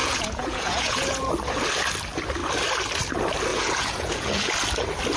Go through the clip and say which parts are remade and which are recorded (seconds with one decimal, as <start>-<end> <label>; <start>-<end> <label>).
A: 0.0-1.3 remade; 1.3-3.5 recorded; 3.5-4.5 remade; 4.5-5.2 recorded